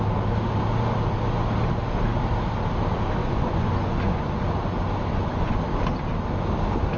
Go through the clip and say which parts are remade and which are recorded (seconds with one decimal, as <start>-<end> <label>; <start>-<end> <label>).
0.0-3.2 recorded; 3.2-4.3 remade; 4.3-5.1 recorded; 5.1-5.6 remade; 5.6-7.0 recorded